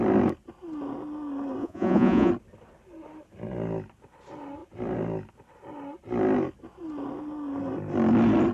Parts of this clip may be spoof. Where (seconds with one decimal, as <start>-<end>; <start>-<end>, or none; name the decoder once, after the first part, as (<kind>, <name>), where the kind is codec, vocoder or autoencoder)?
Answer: 1.6-2.3 (vocoder, Vocos)